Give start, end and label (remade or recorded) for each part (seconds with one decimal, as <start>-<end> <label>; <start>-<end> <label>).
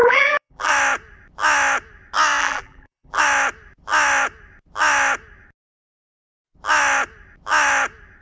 0.0-0.7 remade; 0.7-2.4 recorded; 2.4-3.2 remade; 3.2-8.2 recorded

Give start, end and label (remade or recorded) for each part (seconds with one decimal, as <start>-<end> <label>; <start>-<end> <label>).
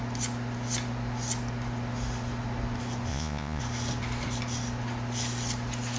0.0-3.1 recorded; 3.1-3.6 remade; 3.6-6.0 recorded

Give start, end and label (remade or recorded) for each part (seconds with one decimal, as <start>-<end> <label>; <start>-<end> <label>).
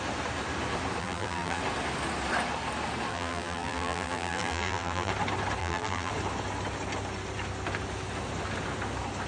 0.0-1.0 recorded; 1.0-1.6 remade; 1.6-3.1 recorded; 3.1-5.1 remade; 5.1-5.6 recorded; 5.6-6.1 remade; 6.1-9.3 recorded